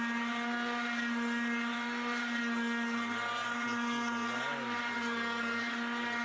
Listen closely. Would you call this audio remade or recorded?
recorded